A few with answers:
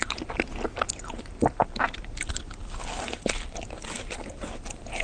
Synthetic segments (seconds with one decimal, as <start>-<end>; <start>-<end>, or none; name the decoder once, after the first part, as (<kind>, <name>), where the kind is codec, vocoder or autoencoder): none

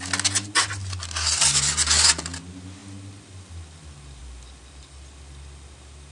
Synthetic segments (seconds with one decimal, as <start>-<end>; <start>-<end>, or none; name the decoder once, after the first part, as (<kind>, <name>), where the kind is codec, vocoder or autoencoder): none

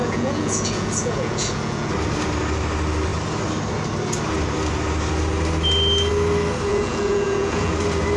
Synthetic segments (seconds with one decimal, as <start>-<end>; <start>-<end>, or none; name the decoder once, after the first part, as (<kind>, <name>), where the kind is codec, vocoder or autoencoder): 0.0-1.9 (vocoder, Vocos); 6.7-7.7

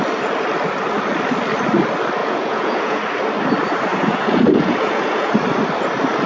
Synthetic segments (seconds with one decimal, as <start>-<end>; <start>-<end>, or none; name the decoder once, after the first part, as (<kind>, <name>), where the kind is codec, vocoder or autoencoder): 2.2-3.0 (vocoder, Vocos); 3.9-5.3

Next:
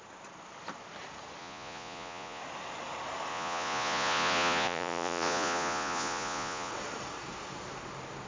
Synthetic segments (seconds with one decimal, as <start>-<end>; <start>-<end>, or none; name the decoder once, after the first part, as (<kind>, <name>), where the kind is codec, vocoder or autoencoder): 1.4-2.4 (vocoder, Vocos); 3.3-6.7